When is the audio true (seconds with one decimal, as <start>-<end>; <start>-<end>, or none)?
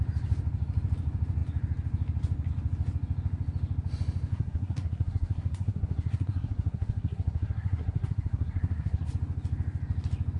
0.0-4.3; 9.1-10.4